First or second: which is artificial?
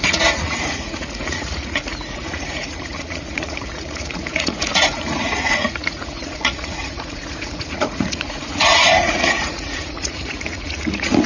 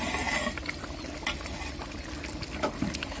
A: first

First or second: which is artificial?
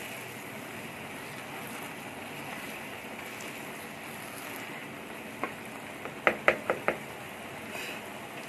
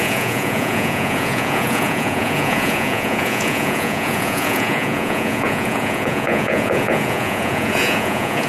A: second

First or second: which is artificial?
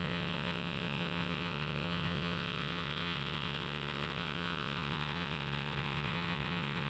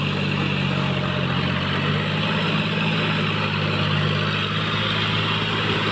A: first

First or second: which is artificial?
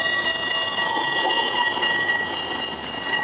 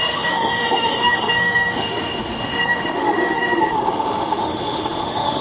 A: second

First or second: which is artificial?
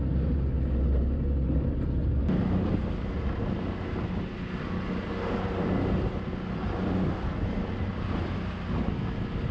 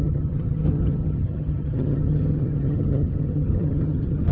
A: second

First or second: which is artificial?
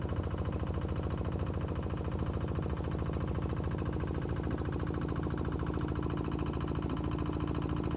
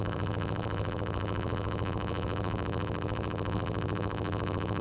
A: second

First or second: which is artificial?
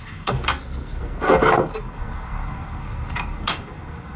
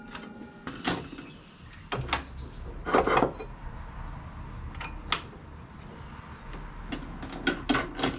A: first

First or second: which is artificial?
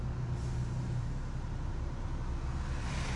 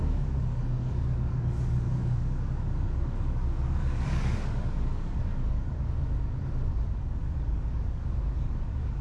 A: second